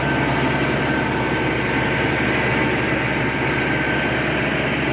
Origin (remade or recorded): recorded